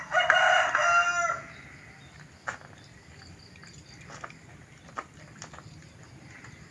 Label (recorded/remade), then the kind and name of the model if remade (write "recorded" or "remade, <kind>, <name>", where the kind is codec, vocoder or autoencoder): recorded